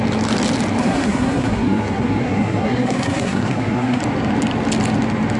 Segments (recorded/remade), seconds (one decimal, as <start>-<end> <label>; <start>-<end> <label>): 0.0-0.8 recorded; 0.8-4.0 remade; 4.0-5.4 recorded

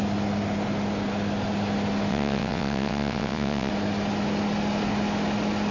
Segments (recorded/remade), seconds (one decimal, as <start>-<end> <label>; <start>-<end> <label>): 0.0-2.1 recorded; 2.1-3.7 remade; 3.7-5.7 recorded

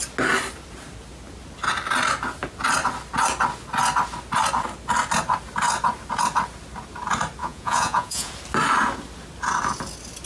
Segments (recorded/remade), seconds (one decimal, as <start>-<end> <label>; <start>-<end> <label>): 0.0-7.4 recorded; 7.4-8.3 remade; 8.3-10.3 recorded

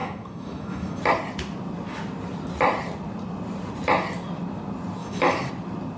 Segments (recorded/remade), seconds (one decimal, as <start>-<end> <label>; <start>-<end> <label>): 0.0-1.0 remade; 1.0-5.0 recorded; 5.0-5.5 remade; 5.5-6.0 recorded

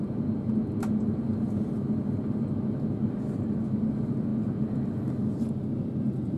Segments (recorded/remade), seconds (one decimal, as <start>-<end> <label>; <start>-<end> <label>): 0.0-6.4 recorded

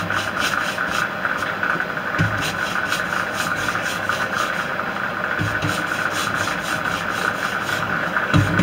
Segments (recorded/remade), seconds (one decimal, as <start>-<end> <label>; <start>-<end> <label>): 0.0-3.5 recorded; 3.5-4.5 remade; 4.5-7.7 recorded; 7.7-8.6 remade

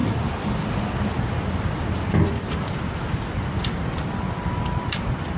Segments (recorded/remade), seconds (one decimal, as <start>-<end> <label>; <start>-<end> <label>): 0.0-3.2 recorded; 3.2-5.4 remade